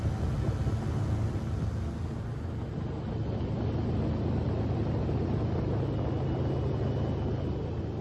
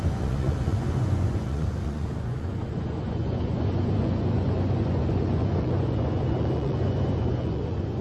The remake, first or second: second